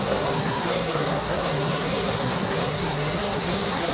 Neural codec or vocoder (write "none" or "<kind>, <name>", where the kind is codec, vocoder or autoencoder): codec, SNAC